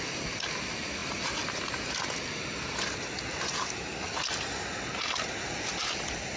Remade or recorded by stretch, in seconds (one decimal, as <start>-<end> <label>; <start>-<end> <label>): 0.0-6.4 recorded

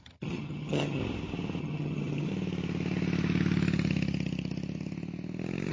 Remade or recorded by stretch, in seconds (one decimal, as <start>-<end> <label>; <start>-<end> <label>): 0.0-1.0 remade; 1.0-1.6 recorded; 1.6-2.3 remade; 2.3-5.7 recorded